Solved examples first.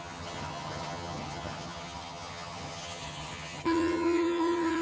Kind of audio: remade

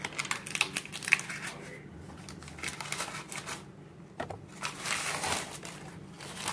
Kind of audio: recorded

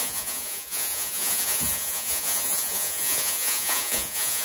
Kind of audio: remade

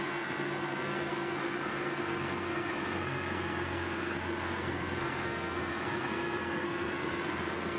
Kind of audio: remade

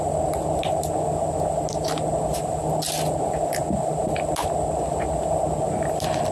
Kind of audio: recorded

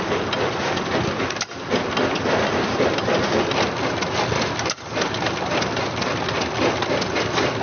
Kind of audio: recorded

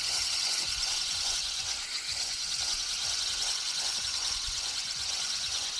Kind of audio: remade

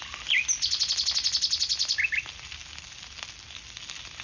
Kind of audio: recorded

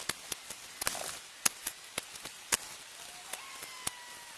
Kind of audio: recorded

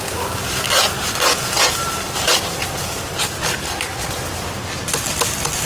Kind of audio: recorded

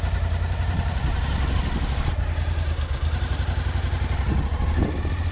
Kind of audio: recorded